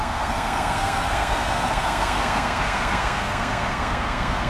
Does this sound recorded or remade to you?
remade